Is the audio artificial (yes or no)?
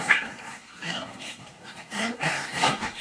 yes